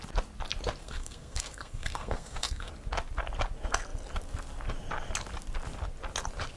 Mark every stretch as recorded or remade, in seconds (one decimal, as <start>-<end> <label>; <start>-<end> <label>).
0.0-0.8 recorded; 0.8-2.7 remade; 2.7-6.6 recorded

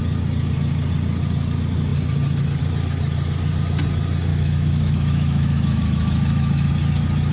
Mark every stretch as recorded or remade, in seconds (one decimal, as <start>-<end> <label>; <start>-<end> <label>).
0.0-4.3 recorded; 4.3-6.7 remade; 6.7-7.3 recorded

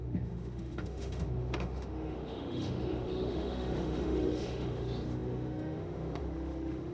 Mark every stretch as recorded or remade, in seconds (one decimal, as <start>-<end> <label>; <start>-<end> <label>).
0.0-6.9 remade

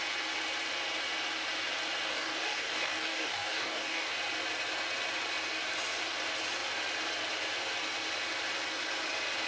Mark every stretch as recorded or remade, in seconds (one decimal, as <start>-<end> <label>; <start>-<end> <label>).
0.0-2.1 recorded; 2.1-4.1 remade; 4.1-9.5 recorded